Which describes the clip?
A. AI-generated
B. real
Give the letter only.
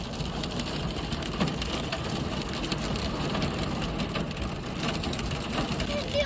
B